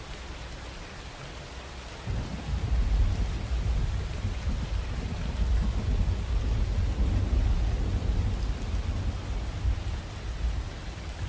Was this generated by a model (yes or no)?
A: no